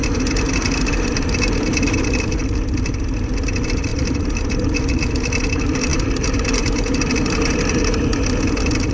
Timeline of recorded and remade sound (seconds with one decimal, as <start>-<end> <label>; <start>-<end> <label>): 0.0-3.9 recorded; 3.9-5.0 remade; 5.0-5.9 recorded; 5.9-7.0 remade; 7.0-8.9 recorded